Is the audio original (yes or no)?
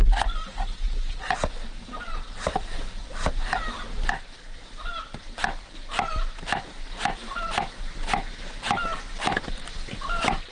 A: yes